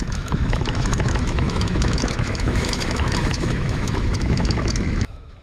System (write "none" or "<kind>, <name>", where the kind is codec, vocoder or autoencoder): autoencoder, DAC-VAE